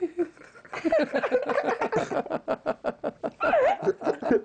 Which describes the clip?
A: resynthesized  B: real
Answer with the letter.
B